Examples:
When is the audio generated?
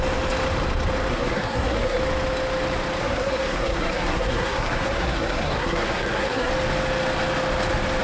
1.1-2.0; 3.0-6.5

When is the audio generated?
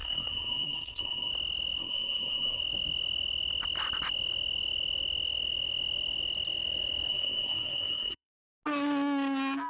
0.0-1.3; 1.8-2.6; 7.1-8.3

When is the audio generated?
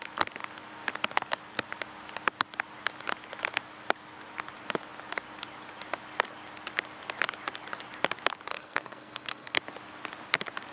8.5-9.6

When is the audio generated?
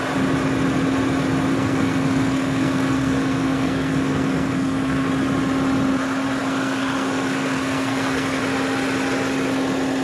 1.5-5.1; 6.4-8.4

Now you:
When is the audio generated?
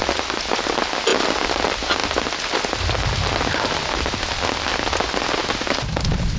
none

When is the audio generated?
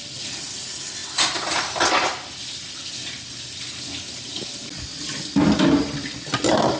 none